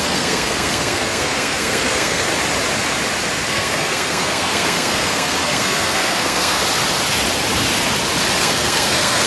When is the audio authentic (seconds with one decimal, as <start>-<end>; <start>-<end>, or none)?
2.3-3.5; 6.6-8.4